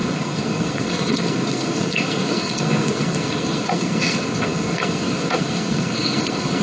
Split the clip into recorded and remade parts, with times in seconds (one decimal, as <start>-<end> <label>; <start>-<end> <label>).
0.0-6.6 remade